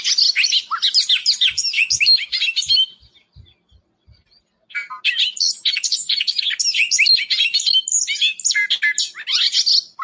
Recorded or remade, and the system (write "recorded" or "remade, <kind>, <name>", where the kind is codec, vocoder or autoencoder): recorded